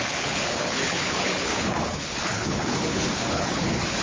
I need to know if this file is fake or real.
fake